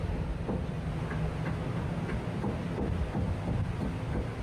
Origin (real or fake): real